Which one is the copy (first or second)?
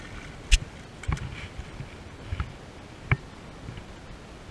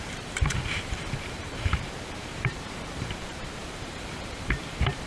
second